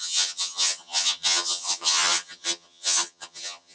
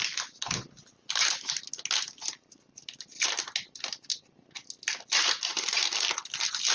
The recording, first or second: second